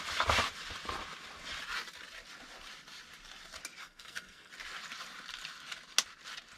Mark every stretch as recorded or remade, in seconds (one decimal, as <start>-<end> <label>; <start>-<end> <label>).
0.0-3.8 recorded; 3.8-4.5 remade; 4.5-6.6 recorded